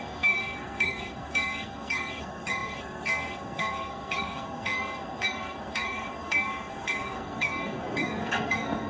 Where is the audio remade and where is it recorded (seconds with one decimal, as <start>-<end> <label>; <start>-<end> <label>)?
0.0-8.9 remade